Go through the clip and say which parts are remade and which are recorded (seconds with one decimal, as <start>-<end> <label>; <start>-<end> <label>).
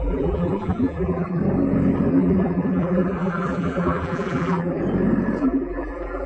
0.0-1.4 remade; 1.4-2.1 recorded; 2.1-4.8 remade; 4.8-5.4 recorded; 5.4-6.3 remade